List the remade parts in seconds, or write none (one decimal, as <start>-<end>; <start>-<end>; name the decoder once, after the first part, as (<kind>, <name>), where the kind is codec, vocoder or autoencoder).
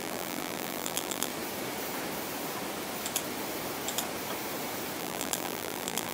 0.0-1.3 (vocoder, BigVGAN v2); 5.0-6.1